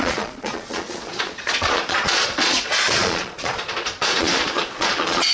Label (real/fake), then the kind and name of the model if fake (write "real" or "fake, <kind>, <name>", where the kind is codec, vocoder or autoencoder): fake, vocoder, Vocos